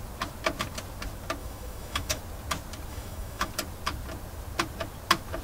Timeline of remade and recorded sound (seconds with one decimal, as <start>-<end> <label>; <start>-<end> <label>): 0.0-1.4 recorded; 1.4-2.2 remade; 2.2-2.9 recorded; 2.9-3.5 remade; 3.5-5.4 recorded